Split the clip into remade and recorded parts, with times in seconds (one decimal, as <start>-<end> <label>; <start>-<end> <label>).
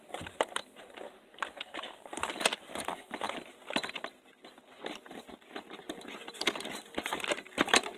0.0-8.0 recorded